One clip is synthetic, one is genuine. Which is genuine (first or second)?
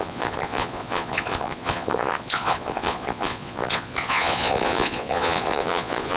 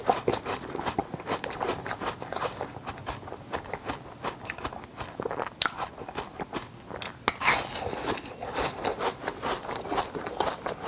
second